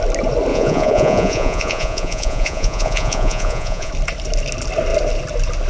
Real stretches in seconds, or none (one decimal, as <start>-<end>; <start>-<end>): 0.0-0.5; 3.9-5.7